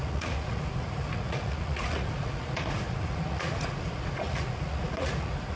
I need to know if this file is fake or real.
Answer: fake